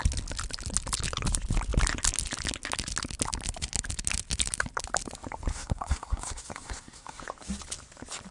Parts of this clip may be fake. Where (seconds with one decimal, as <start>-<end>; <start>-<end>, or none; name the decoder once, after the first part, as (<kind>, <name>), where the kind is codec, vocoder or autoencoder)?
5.5-7.2 (codec, SNAC)